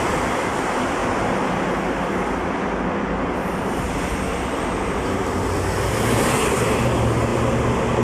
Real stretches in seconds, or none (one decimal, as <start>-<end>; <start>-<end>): 0.0-8.0